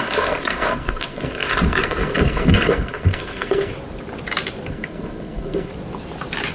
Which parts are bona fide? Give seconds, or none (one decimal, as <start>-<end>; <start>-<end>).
3.7-4.7; 5.7-6.5